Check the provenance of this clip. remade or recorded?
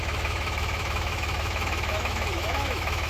remade